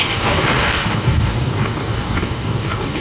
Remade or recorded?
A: remade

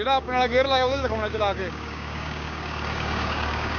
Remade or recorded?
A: remade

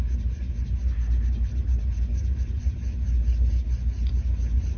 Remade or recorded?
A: recorded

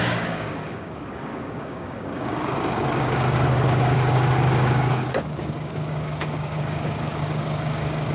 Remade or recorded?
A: remade